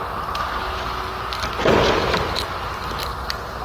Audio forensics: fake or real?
real